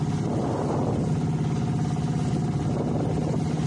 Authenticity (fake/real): real